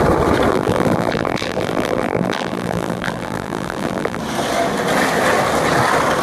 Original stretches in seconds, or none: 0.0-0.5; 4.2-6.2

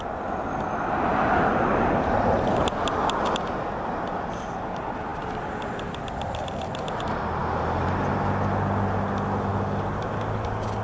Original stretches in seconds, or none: 0.0-5.1; 6.9-10.8